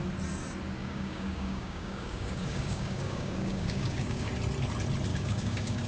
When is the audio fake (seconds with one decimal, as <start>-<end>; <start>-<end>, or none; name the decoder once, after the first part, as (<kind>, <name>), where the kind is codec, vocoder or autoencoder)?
0.8-4.3 (codec, DAC); 5.1-5.9